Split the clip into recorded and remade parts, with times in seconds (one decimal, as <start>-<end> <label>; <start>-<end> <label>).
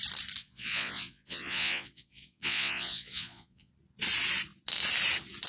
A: 0.0-0.4 recorded; 0.4-3.7 remade; 3.7-5.5 recorded